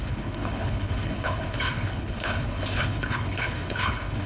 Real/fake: fake